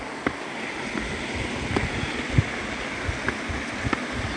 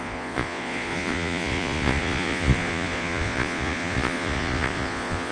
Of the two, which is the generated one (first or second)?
second